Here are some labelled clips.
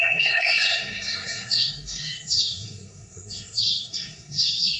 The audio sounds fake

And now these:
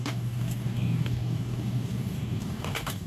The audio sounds fake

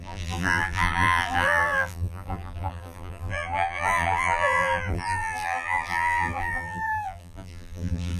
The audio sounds fake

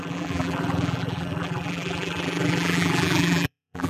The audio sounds fake